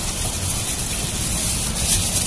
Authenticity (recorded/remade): recorded